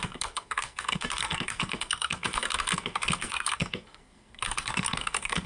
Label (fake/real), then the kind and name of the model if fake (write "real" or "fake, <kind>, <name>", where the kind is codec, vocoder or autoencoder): fake, codec, SNAC